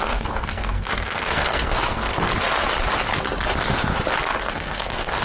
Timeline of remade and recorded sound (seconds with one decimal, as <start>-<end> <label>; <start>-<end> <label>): 0.0-2.3 remade; 2.3-4.4 recorded; 4.4-5.2 remade